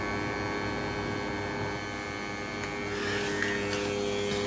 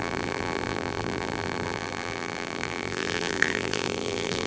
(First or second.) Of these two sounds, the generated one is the second